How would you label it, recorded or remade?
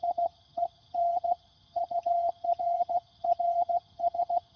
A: remade